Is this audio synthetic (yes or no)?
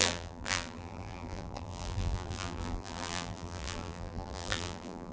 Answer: yes